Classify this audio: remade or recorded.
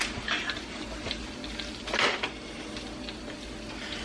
recorded